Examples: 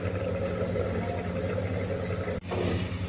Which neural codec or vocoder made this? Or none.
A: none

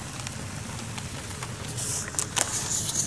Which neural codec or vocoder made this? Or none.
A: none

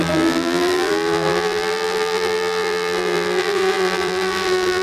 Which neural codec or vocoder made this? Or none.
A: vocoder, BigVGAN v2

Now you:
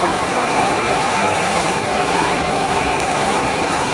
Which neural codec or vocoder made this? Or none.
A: codec, SNAC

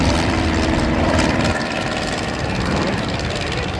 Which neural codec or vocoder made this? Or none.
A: vocoder, BigVGAN v2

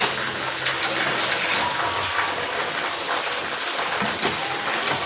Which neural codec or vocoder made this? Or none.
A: none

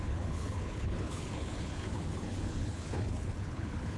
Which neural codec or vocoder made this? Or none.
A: codec, HILCodec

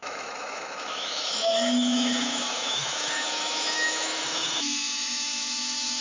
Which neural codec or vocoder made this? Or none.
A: autoencoder, DAC-VAE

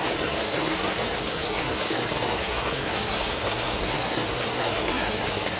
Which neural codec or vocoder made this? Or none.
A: codec, SNAC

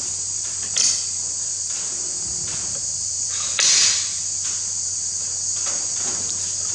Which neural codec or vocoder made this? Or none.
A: none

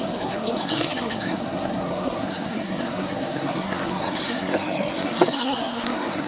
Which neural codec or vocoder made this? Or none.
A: codec, SNAC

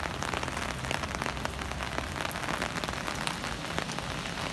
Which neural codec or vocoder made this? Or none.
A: none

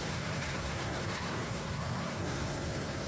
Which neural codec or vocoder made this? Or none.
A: codec, SNAC